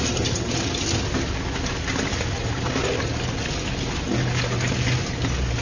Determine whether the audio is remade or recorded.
recorded